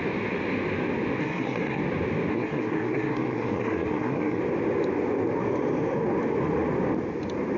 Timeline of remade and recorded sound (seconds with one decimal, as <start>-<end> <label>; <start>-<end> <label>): 0.0-1.2 recorded; 1.2-1.8 remade; 1.8-2.3 recorded; 2.3-4.4 remade; 4.4-7.6 recorded